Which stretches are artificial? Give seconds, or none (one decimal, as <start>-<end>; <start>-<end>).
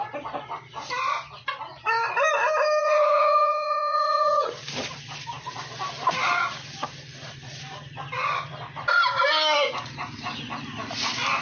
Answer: 2.8-4.5